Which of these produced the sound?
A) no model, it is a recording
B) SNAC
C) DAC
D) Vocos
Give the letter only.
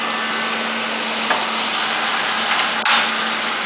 A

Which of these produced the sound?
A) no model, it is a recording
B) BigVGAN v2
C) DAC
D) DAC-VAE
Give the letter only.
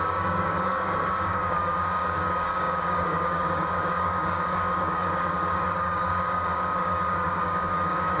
C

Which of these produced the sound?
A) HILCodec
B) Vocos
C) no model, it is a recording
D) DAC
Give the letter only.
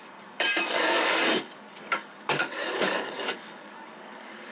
D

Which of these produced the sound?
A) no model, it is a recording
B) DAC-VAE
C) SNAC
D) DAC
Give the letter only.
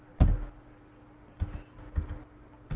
A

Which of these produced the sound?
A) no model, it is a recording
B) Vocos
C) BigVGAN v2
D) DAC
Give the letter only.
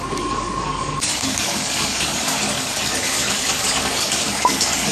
D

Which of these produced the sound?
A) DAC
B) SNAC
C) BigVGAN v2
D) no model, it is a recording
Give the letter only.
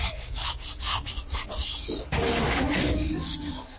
A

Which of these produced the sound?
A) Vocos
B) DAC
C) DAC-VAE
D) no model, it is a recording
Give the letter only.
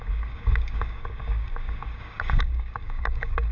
B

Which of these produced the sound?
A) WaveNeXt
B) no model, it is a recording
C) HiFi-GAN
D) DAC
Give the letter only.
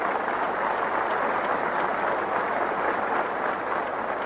B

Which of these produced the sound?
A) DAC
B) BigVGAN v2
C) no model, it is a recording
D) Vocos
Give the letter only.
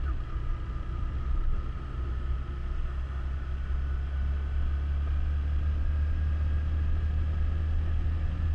C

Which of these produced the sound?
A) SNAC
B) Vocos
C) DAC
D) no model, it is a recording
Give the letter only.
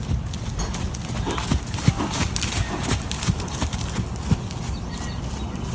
D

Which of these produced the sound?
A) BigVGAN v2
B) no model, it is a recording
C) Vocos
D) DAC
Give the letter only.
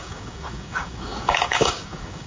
D